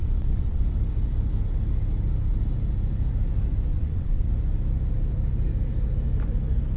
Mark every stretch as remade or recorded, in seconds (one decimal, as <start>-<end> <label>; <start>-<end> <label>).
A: 0.0-0.6 remade; 0.6-3.7 recorded; 3.7-4.3 remade; 4.3-6.8 recorded